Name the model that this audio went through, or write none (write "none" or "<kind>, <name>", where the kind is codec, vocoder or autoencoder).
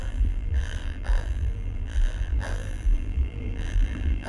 vocoder, BigVGAN v2